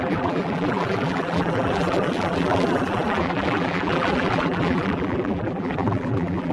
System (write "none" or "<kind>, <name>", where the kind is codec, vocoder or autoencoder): vocoder, BigVGAN v2